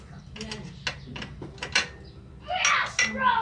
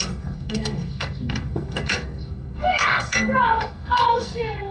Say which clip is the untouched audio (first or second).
first